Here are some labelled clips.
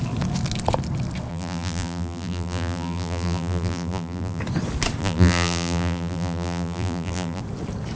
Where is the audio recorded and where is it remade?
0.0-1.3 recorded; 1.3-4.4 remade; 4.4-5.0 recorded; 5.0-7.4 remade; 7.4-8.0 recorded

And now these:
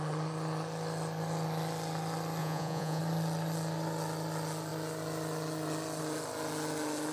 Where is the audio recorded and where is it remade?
0.0-2.4 recorded; 2.4-3.0 remade; 3.0-7.1 recorded

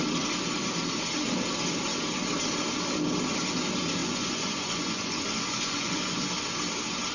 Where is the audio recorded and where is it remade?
0.0-4.0 recorded; 4.0-6.3 remade; 6.3-7.1 recorded

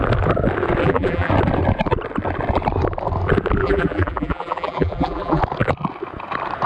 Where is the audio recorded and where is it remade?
0.0-0.8 recorded; 0.8-1.3 remade; 1.3-3.6 recorded; 3.6-5.4 remade; 5.4-6.7 recorded

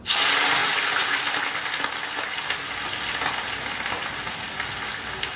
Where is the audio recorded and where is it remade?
0.0-5.4 recorded

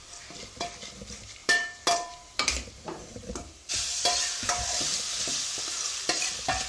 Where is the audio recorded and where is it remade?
0.0-1.4 recorded; 1.4-3.7 remade; 3.7-6.7 recorded

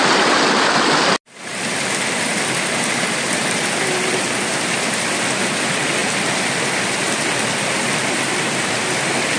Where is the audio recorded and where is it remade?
0.0-1.5 recorded; 1.5-4.3 remade; 4.3-9.4 recorded

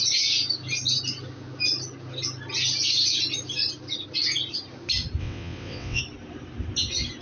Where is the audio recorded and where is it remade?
0.0-5.2 recorded; 5.2-6.0 remade; 6.0-7.2 recorded